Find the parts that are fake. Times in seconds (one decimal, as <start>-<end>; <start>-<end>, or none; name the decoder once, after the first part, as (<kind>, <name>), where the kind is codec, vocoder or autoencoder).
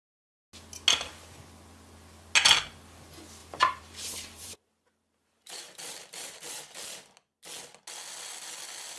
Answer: 3.4-6.6 (vocoder, BigVGAN v2)